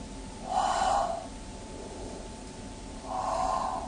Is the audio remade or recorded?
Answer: recorded